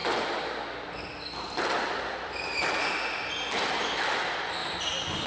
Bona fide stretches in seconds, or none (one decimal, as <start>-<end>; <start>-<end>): 0.0-5.3